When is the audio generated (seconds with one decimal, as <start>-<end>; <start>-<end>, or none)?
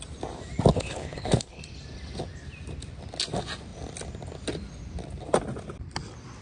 0.7-1.6